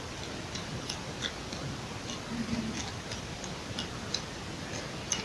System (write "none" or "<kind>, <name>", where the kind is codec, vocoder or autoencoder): none